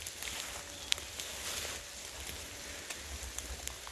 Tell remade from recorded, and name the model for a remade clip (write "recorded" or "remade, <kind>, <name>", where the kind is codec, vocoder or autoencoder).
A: recorded